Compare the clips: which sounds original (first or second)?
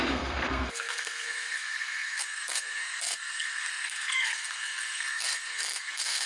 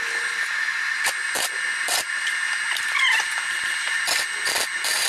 second